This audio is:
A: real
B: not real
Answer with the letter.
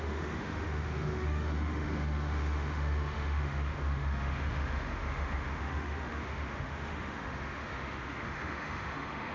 B